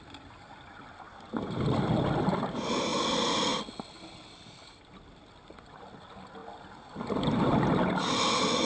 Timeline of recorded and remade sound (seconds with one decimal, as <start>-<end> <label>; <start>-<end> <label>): 0.0-8.7 recorded